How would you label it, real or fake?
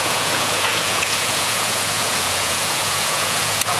fake